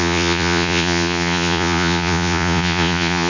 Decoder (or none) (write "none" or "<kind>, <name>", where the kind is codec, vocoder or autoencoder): vocoder, Vocos